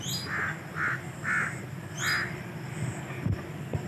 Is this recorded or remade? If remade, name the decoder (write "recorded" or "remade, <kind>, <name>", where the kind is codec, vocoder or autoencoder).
recorded